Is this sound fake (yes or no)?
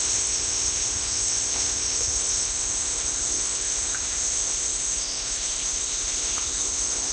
yes